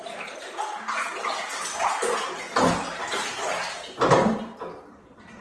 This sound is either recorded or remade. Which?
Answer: recorded